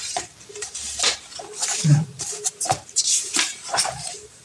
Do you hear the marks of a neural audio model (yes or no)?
yes